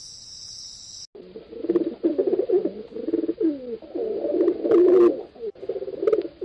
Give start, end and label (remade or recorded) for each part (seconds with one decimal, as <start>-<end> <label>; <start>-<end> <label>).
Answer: 0.0-6.4 recorded